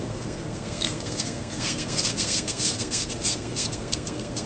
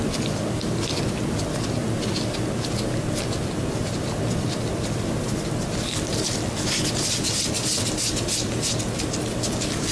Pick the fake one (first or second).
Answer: first